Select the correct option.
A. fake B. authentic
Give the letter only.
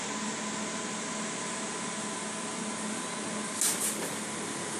B